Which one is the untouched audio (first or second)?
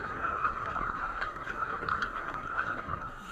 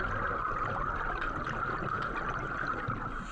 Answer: second